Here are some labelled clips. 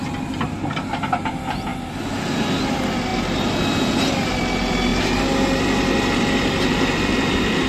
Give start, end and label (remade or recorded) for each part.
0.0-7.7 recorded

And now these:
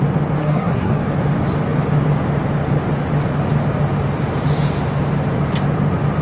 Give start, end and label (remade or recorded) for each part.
0.0-0.4 recorded; 0.4-1.0 remade; 1.0-6.2 recorded

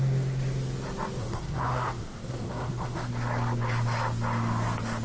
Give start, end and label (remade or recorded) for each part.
0.0-1.2 recorded; 1.2-3.1 remade; 3.1-5.0 recorded